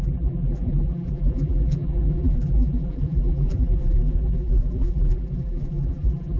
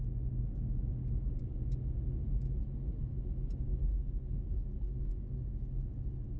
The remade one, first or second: first